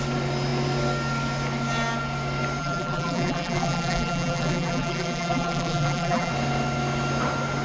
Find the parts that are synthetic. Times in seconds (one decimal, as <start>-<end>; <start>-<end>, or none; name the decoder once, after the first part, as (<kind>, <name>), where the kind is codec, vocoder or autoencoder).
2.6-6.3 (vocoder, BigVGAN v2)